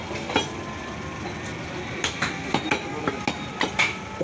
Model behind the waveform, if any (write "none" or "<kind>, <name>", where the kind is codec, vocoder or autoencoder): none